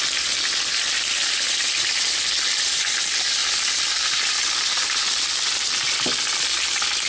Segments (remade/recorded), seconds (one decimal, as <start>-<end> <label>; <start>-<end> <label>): 0.0-7.1 recorded